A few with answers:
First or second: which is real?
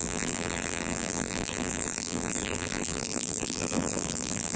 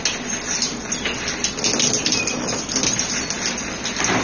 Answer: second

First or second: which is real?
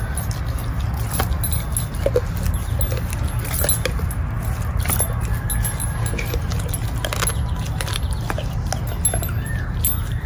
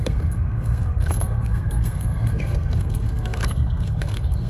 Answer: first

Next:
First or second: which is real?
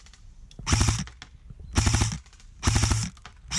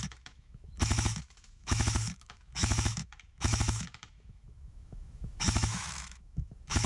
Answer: first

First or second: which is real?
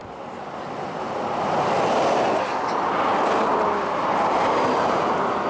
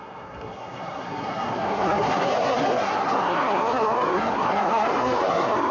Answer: first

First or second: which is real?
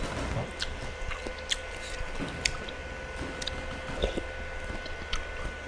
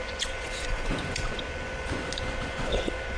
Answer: first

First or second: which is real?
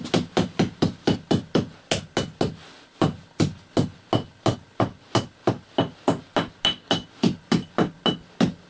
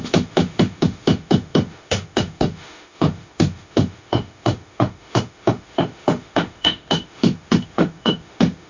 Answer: first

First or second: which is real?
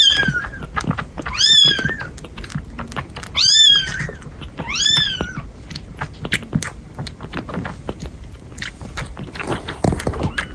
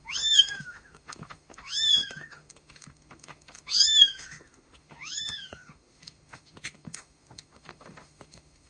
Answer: first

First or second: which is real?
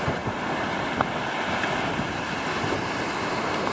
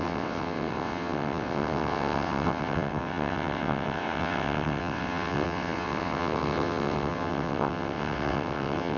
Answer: first